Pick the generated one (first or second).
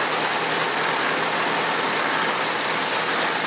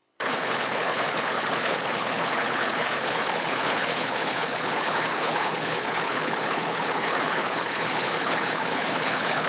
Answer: second